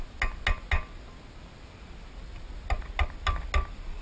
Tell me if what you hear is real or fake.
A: real